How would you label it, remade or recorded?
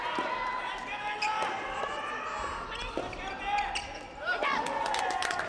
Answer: recorded